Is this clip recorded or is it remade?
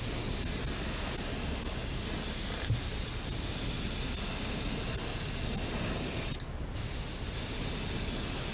recorded